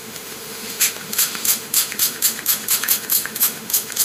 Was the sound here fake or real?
fake